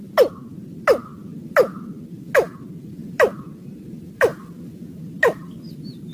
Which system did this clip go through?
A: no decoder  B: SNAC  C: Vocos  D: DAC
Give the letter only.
A